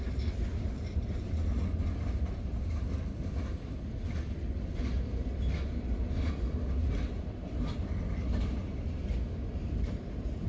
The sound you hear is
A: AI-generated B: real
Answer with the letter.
B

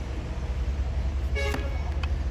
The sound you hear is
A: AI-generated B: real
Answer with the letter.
B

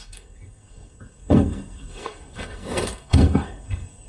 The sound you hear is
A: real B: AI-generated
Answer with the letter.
B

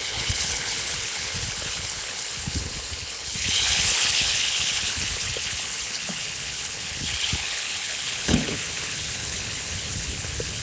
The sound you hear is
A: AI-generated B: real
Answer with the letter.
A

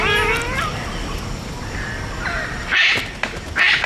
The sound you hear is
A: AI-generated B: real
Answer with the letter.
B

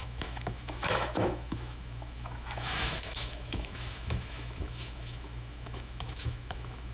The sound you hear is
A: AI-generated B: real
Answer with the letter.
A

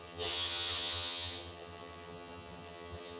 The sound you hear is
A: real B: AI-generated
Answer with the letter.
B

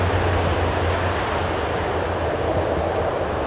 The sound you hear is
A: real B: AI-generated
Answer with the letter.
A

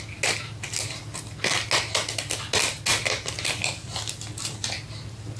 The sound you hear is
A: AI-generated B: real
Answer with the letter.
B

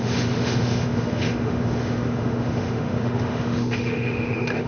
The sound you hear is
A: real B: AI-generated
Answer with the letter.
B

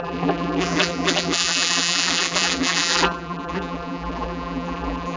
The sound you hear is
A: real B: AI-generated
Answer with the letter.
B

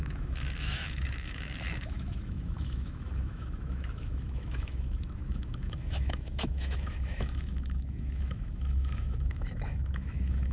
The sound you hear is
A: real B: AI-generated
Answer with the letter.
B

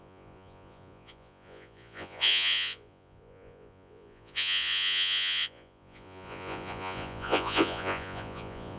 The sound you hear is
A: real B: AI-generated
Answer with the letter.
B